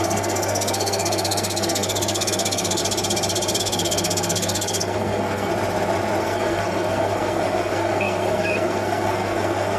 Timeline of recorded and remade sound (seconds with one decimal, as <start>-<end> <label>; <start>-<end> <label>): 0.0-2.8 remade; 2.8-3.6 recorded; 3.6-5.5 remade; 5.5-6.2 recorded; 6.2-9.8 remade